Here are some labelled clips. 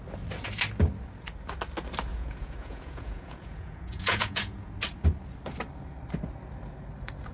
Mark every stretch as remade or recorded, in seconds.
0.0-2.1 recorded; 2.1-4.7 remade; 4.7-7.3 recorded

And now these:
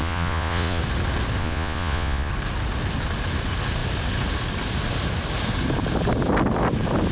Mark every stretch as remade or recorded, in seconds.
0.0-0.8 remade; 0.8-1.4 recorded; 1.4-2.3 remade; 2.3-7.1 recorded

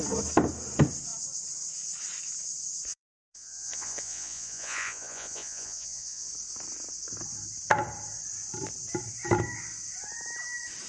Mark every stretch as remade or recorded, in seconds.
0.0-2.9 recorded; 2.9-6.3 remade; 6.3-10.9 recorded